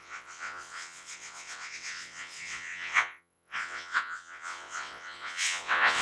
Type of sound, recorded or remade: remade